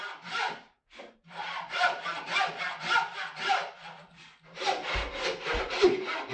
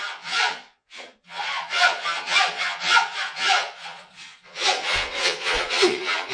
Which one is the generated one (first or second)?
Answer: second